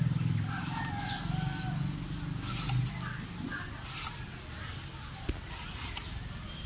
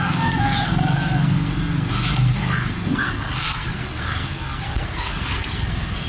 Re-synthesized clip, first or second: second